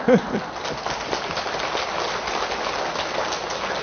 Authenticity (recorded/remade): recorded